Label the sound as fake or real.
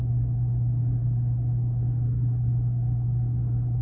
real